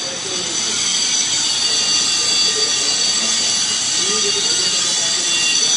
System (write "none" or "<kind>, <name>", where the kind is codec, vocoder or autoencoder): none